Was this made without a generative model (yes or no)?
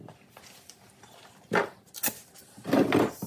yes